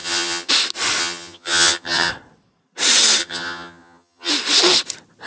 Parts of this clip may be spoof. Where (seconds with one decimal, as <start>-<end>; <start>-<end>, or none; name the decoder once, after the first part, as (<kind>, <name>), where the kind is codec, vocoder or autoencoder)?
0.0-0.5 (vocoder, HiFi-GAN); 1.0-2.1; 3.2-4.3